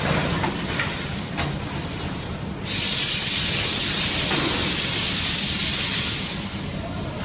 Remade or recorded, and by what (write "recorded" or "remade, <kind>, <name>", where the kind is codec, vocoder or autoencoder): recorded